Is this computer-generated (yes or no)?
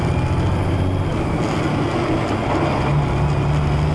no